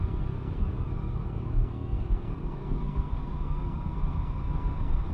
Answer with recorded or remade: remade